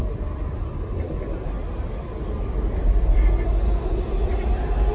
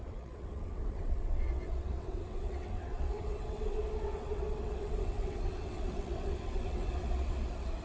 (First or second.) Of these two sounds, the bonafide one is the first